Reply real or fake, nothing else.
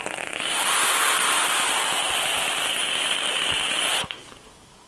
real